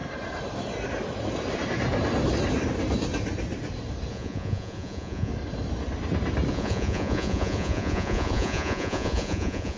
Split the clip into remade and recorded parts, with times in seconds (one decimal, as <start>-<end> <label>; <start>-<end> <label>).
0.0-4.1 recorded; 4.1-5.3 remade; 5.3-6.5 recorded; 6.5-9.8 remade